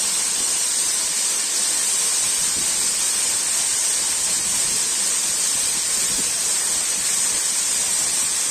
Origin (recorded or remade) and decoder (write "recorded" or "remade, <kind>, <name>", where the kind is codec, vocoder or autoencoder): recorded